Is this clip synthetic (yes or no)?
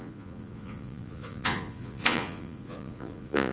yes